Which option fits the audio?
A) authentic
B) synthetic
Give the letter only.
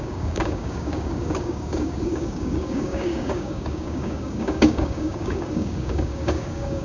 B